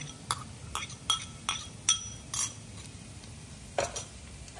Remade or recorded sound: recorded